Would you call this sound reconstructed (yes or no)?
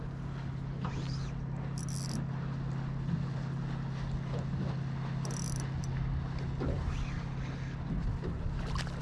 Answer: no